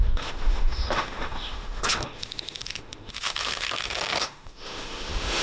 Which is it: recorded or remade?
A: remade